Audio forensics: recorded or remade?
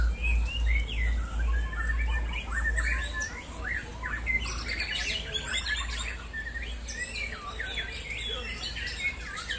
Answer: recorded